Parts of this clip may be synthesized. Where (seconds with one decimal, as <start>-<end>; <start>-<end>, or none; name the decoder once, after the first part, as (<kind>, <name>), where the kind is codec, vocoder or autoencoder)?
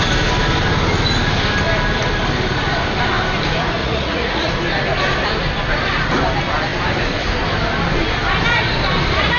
3.8-4.5 (vocoder, Vocos)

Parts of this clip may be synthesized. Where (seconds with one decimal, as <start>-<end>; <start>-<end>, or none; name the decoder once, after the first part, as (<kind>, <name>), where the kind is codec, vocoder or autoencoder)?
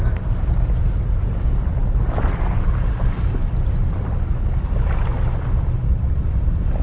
none